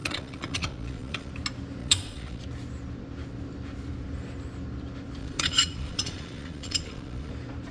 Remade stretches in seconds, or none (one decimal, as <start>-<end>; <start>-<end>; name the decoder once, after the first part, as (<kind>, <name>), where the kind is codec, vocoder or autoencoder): 0.0-1.3 (vocoder, Vocos); 1.8-2.4; 5.2-7.3